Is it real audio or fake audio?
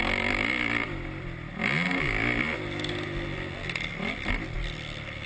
real